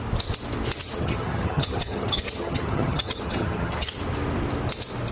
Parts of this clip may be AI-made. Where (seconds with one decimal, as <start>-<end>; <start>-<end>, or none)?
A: 0.8-3.9